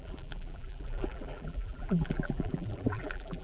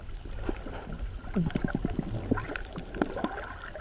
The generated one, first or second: first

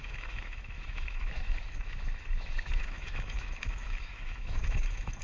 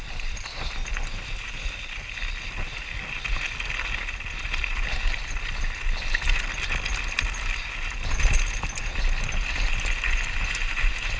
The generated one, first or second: first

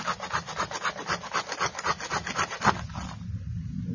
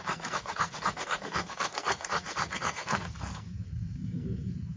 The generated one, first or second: second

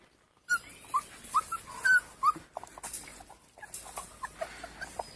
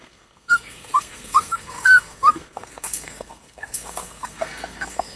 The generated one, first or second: second